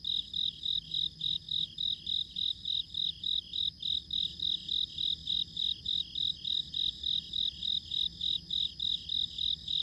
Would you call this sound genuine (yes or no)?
yes